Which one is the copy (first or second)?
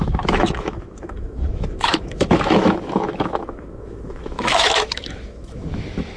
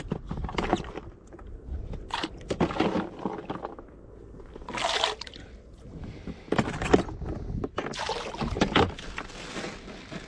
first